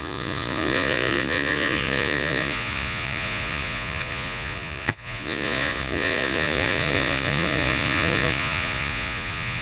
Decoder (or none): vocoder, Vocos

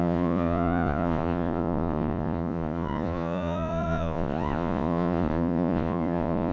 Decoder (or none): vocoder, Vocos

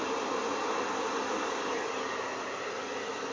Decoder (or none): none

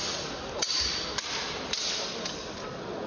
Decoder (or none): none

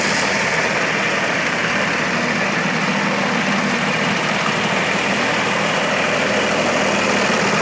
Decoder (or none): none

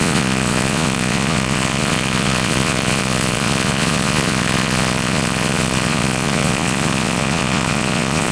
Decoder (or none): vocoder, Vocos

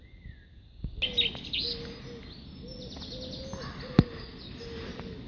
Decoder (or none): none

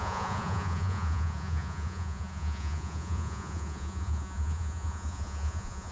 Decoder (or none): vocoder, Vocos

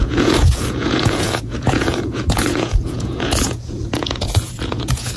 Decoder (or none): vocoder, Vocos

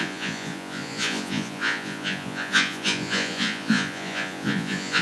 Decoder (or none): vocoder, Vocos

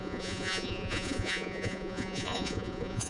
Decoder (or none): vocoder, Vocos